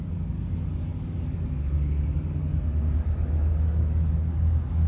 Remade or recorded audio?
remade